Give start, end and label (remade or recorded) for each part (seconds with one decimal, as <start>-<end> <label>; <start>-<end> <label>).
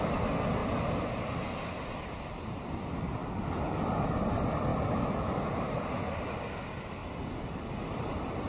0.0-0.6 recorded; 0.6-1.7 remade; 1.7-4.7 recorded; 4.7-5.9 remade; 5.9-7.0 recorded; 7.0-7.6 remade; 7.6-8.5 recorded